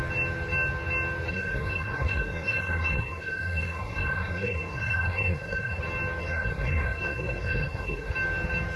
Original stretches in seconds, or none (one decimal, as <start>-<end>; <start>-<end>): 0.0-1.3; 5.8-6.2; 8.1-8.8

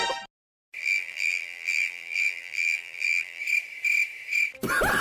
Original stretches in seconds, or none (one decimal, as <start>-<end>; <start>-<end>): 0.0-0.8; 3.4-5.0

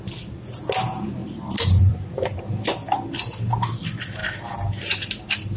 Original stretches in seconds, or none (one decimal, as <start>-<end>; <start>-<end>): 0.0-1.2; 2.4-4.2; 5.1-5.6

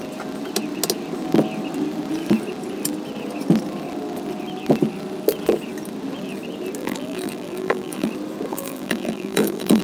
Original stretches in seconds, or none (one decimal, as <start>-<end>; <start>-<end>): 0.0-6.8; 8.1-8.5

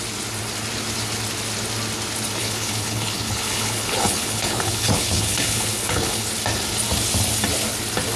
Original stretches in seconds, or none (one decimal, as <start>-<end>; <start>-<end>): 0.0-2.4; 6.3-8.2